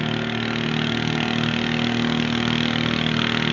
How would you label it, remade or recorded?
recorded